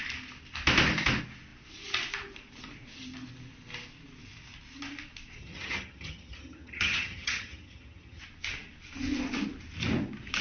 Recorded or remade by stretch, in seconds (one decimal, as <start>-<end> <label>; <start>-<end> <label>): 0.0-5.4 recorded; 5.4-8.2 remade; 8.2-10.4 recorded